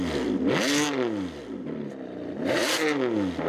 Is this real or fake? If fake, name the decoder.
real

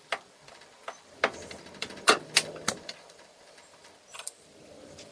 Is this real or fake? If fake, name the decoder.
fake, vocoder, BigVGAN v2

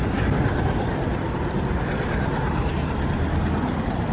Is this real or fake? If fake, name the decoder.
real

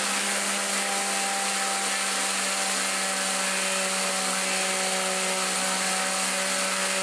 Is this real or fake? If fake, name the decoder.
real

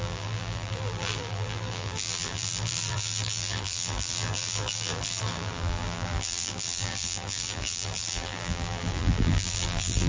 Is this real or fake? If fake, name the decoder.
fake, vocoder, BigVGAN v2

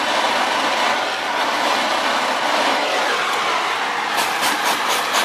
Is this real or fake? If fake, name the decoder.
fake, vocoder, BigVGAN v2